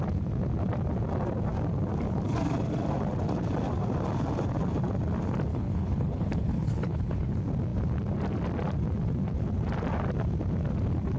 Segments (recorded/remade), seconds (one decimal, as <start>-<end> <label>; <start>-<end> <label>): 0.0-5.5 recorded; 5.5-7.3 remade; 7.3-11.2 recorded